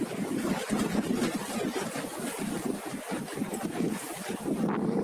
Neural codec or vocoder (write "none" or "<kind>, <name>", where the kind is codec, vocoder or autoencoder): none